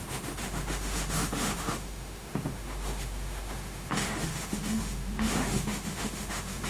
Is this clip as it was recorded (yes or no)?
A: no